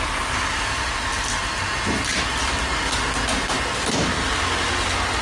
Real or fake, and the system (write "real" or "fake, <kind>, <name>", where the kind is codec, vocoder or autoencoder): real